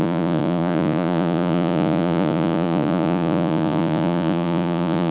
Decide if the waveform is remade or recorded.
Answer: remade